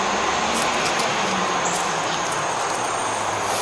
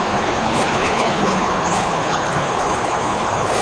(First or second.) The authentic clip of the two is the first